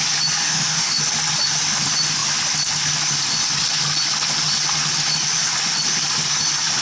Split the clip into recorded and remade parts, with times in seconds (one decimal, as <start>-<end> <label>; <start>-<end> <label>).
0.0-0.4 recorded; 0.4-1.0 remade; 1.0-6.8 recorded